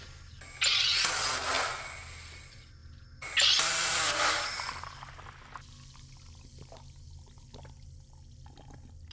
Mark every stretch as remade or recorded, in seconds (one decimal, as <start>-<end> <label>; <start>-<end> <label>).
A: 0.0-9.1 recorded